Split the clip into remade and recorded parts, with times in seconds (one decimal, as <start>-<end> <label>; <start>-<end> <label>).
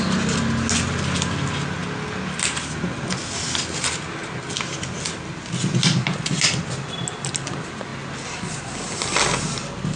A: 0.0-10.0 recorded